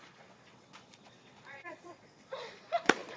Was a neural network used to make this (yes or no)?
yes